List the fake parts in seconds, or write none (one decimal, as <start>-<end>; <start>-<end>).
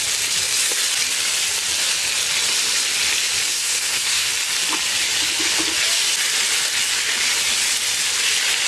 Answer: 3.5-4.3